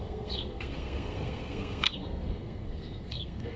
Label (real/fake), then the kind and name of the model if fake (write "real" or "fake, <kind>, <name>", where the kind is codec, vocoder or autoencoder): fake, codec, SNAC